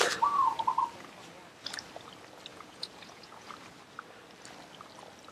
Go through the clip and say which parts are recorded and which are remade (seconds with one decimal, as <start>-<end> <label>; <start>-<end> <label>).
0.0-2.5 recorded; 2.5-3.5 remade; 3.5-5.3 recorded